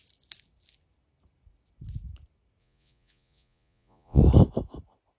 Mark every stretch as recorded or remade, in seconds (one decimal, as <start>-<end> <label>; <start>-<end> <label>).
0.0-2.6 recorded; 2.6-4.2 remade; 4.2-5.2 recorded